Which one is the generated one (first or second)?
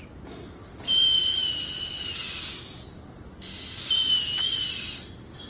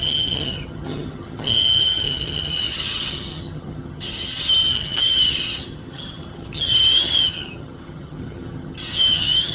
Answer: second